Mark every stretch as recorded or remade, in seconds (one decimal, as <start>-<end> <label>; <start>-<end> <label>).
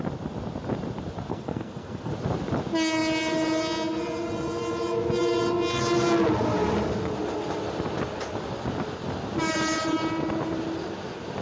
0.0-1.3 recorded; 1.3-2.1 remade; 2.1-11.4 recorded